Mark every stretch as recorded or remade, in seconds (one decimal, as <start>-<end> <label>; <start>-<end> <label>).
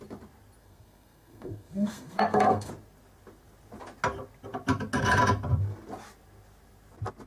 0.0-0.6 recorded; 0.6-2.7 remade; 2.7-7.3 recorded